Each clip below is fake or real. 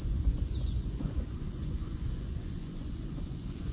fake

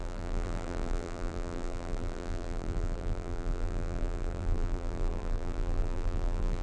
fake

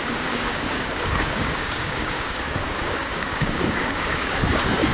fake